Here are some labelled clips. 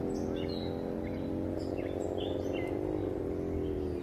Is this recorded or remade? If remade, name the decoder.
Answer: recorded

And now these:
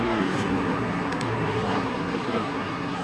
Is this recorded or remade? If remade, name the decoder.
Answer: remade, codec, SNAC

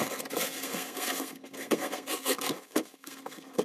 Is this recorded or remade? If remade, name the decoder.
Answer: remade, codec, SNAC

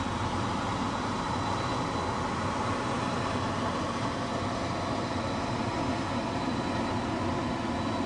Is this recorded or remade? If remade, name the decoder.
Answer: recorded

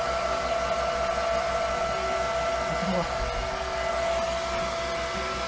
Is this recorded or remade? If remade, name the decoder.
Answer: recorded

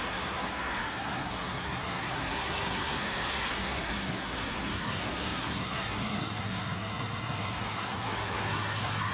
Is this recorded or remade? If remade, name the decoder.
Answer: remade, codec, SNAC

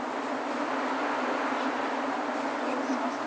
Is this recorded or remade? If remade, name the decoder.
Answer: recorded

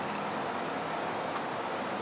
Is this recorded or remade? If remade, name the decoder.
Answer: recorded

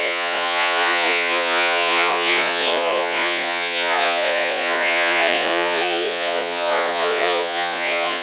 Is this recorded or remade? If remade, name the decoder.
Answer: remade, vocoder, Vocos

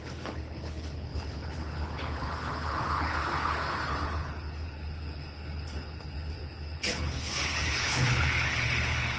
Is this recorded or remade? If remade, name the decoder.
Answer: remade, codec, HILCodec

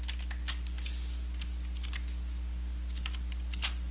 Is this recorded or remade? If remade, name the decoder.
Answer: recorded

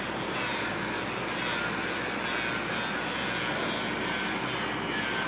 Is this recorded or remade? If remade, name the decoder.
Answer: recorded